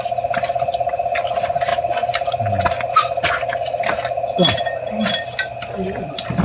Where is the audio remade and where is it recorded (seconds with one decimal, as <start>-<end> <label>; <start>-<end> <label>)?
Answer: 0.0-6.4 recorded

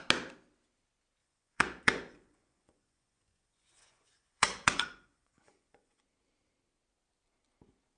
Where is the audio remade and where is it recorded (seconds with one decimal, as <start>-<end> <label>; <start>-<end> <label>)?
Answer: 0.0-1.2 recorded; 1.2-6.0 remade; 6.0-8.0 recorded

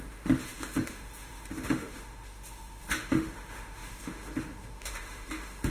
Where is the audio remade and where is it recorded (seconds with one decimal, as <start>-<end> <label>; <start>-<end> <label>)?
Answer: 0.0-5.7 remade

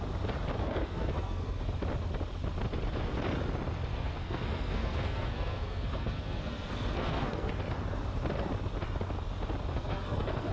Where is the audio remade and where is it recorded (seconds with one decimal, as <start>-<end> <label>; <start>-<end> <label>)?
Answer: 0.0-0.6 recorded; 0.6-1.6 remade; 1.6-3.9 recorded; 3.9-7.5 remade; 7.5-9.7 recorded; 9.7-10.5 remade

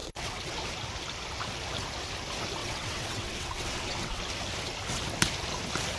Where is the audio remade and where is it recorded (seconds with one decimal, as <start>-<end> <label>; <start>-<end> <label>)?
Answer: 0.0-0.7 remade; 0.7-2.6 recorded; 2.6-4.2 remade; 4.2-6.0 recorded